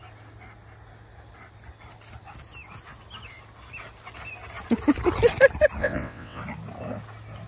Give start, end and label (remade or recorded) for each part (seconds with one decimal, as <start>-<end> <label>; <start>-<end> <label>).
0.0-5.8 recorded; 5.8-6.4 remade; 6.4-7.5 recorded